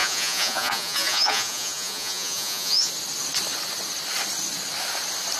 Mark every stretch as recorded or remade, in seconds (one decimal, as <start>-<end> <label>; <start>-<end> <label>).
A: 0.0-2.9 remade; 2.9-5.4 recorded